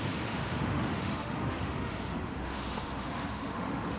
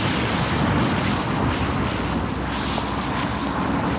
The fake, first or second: first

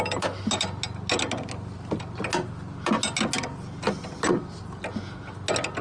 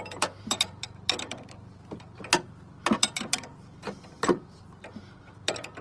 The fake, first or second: second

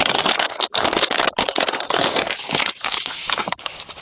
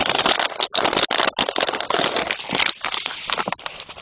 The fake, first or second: first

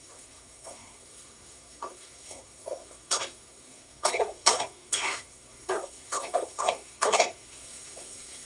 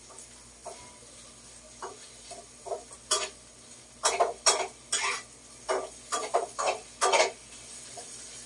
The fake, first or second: first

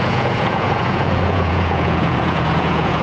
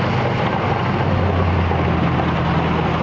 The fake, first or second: first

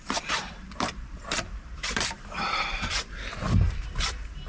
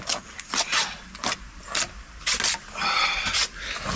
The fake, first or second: first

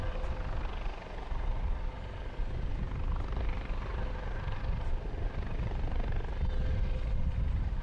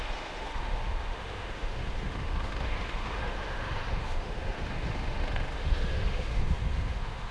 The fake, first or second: second